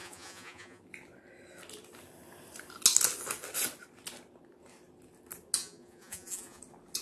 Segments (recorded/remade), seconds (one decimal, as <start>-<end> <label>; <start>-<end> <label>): 0.0-0.8 remade; 0.8-5.6 recorded; 5.6-6.6 remade; 6.6-7.0 recorded